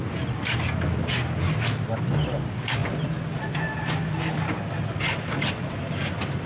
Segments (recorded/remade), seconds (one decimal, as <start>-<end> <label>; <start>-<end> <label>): 0.0-6.5 recorded